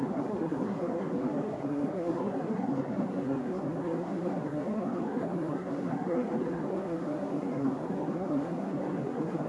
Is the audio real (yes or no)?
no